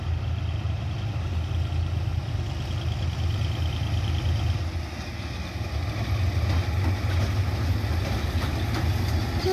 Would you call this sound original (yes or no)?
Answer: yes